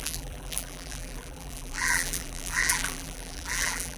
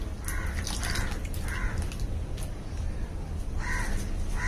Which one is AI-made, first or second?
first